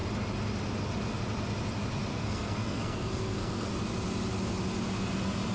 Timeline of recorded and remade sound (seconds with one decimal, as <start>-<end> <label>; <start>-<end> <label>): 0.0-2.1 recorded; 2.1-3.7 remade; 3.7-5.5 recorded